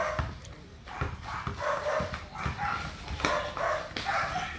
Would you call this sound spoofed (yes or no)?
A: no